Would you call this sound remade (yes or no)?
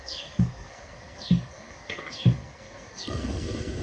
yes